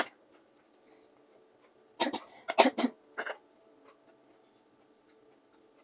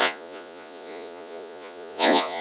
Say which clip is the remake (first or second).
second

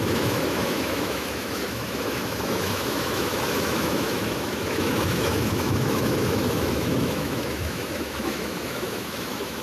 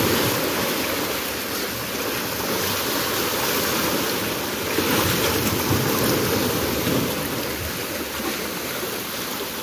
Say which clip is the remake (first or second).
first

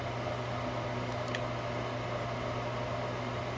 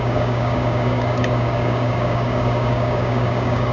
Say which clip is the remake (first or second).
second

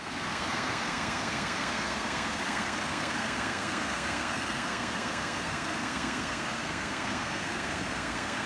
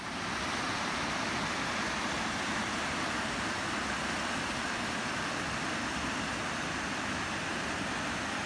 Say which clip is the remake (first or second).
first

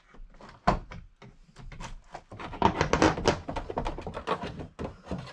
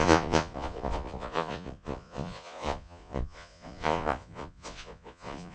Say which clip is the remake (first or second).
second